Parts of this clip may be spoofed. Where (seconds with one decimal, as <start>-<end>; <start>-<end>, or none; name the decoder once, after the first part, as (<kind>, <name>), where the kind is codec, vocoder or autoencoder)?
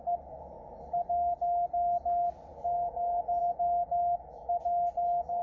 none